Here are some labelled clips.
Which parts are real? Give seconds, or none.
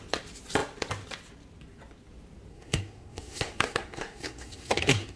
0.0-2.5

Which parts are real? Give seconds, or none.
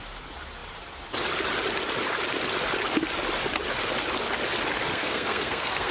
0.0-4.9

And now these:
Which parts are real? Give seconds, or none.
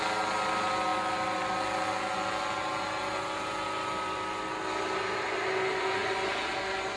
0.0-7.0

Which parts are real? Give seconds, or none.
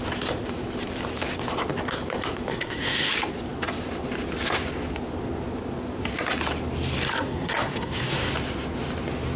0.0-2.5; 3.1-7.1; 8.3-9.4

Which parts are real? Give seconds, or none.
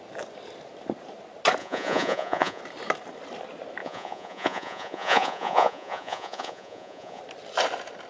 0.0-1.6; 2.6-3.8; 7.2-8.1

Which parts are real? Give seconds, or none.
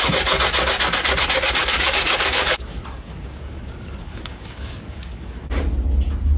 0.0-1.6; 5.4-6.4